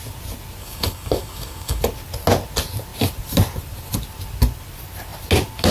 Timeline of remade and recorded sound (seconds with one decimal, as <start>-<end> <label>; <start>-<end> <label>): 0.0-0.6 recorded; 0.6-1.8 remade; 1.8-5.7 recorded